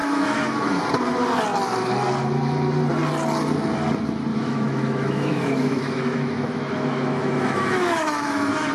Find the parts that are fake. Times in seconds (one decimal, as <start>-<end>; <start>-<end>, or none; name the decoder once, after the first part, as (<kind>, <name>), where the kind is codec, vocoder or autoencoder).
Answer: 0.0-0.8 (autoencoder, DAC-VAE); 4.3-8.7